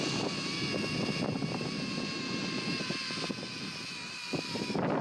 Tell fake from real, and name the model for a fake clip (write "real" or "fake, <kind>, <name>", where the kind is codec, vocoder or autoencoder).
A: real